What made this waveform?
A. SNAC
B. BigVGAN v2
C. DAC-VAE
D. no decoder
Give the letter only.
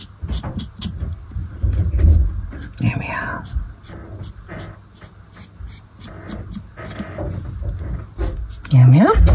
D